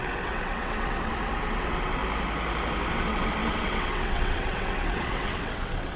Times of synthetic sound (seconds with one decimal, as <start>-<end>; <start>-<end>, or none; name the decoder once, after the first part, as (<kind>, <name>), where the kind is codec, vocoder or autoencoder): 0.0-2.0 (vocoder, WaveNeXt); 2.9-6.0